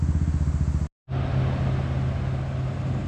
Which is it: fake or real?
real